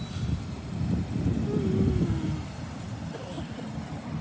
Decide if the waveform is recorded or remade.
recorded